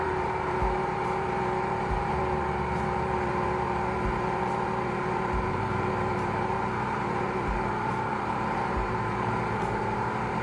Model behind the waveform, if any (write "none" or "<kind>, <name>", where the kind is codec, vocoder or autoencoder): vocoder, BigVGAN v2